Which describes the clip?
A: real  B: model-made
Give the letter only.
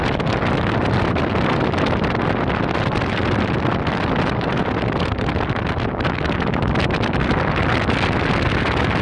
A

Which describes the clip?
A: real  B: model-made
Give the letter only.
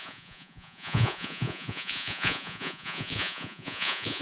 B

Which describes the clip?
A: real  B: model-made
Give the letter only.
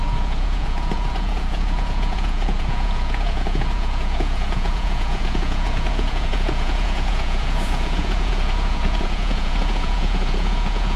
B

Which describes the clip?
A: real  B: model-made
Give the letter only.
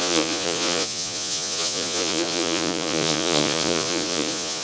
B